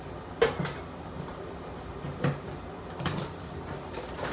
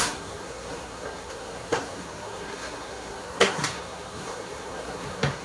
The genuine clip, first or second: first